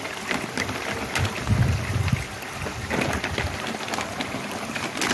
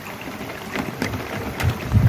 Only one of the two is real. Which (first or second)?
first